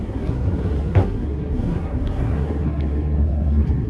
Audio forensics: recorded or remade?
remade